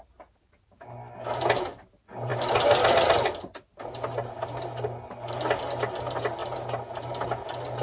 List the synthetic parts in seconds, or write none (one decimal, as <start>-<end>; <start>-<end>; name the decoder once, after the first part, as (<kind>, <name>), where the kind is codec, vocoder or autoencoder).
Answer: none